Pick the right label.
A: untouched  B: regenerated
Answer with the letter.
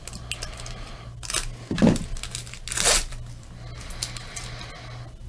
A